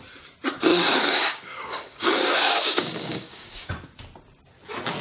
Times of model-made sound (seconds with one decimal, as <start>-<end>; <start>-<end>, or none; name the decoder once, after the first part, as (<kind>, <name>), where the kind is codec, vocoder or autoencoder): 0.7-3.7 (codec, DAC)